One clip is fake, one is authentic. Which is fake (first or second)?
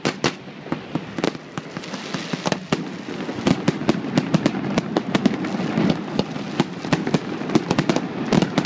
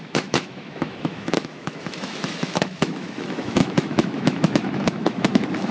second